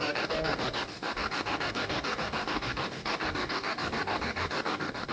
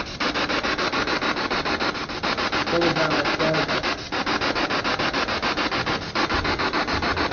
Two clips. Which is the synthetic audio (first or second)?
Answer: first